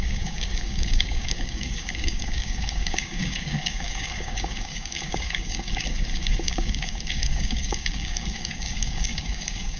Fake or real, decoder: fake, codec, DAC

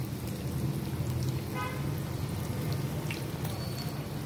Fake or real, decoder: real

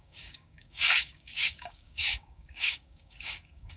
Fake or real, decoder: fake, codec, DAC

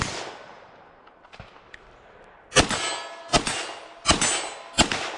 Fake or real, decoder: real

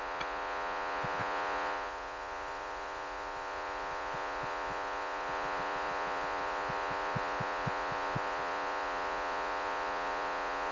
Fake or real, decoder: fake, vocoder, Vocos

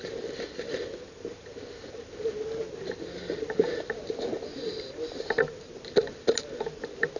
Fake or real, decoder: real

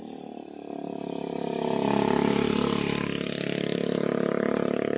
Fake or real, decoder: real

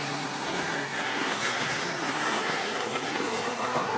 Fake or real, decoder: fake, codec, SNAC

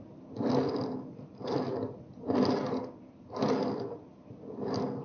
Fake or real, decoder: real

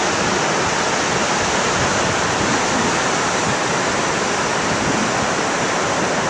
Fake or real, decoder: real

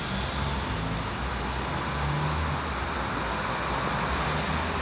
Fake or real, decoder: real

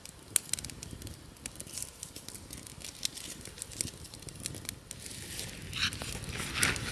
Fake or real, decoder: real